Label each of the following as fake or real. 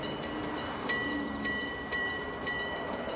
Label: fake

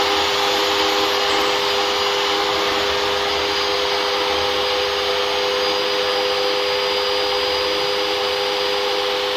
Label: real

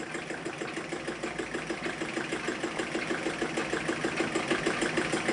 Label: real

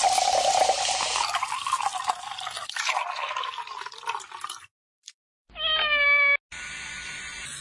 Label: real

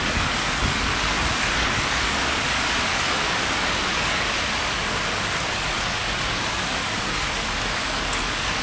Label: fake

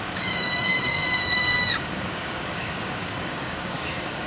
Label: fake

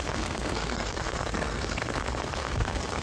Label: fake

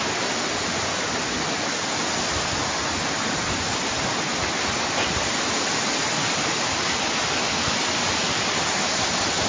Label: real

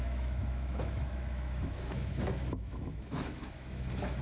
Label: fake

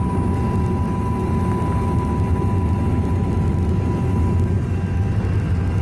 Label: real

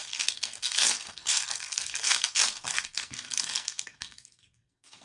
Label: fake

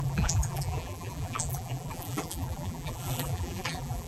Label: fake